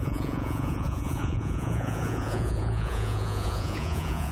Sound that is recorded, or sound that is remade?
remade